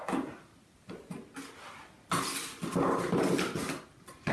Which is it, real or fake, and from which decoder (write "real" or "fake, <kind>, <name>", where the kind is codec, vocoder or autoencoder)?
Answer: real